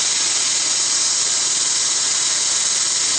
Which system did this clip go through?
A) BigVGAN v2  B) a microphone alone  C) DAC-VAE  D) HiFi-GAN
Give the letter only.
B